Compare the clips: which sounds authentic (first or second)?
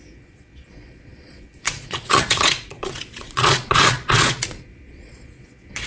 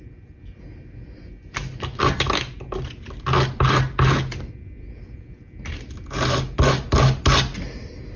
second